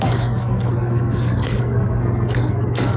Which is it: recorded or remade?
remade